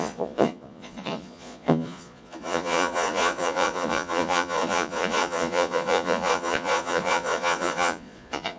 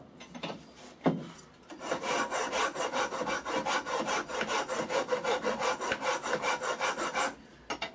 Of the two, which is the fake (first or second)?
first